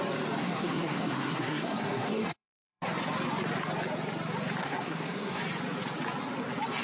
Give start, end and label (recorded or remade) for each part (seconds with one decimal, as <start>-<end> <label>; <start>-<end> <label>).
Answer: 0.0-0.4 recorded; 0.4-2.8 remade; 2.8-4.6 recorded; 4.6-5.4 remade; 5.4-6.8 recorded